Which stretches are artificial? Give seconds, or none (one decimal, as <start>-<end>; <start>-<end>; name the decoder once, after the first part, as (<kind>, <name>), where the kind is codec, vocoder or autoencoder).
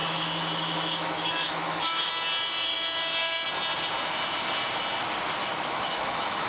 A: 0.0-2.1 (autoencoder, DAC-VAE); 5.5-6.5